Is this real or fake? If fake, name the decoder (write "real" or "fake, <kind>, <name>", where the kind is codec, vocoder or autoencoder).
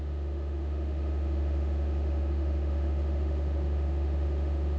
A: fake, autoencoder, DAC-VAE